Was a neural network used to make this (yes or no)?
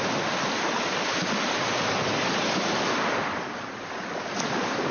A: no